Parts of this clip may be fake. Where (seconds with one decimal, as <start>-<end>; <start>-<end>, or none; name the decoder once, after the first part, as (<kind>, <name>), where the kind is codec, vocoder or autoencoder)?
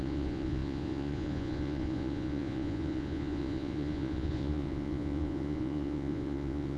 0.0-6.8 (vocoder, Vocos)